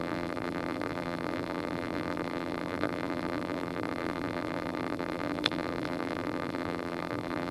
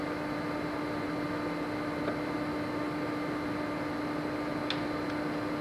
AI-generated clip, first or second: first